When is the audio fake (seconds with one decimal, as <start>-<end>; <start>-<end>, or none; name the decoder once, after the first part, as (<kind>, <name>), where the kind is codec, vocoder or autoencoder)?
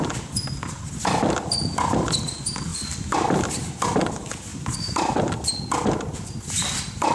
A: none